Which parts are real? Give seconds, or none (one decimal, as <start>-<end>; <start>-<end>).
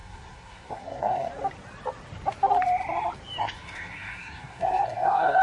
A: 1.3-3.4